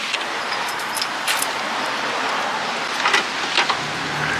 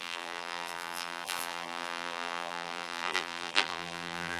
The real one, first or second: first